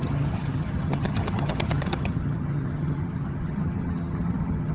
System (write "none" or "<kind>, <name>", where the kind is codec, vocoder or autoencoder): vocoder, HiFi-GAN